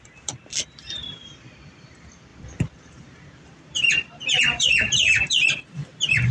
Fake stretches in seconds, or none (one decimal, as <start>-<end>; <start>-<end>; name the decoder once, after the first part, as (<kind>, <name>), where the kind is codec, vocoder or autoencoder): 0.0-6.3 (vocoder, BigVGAN v2)